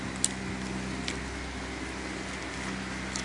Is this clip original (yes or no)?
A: yes